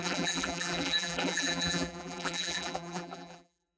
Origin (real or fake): fake